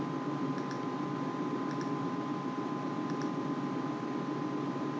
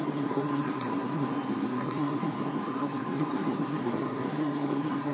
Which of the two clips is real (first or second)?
first